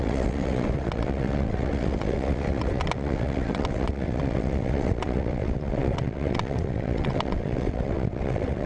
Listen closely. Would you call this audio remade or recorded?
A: remade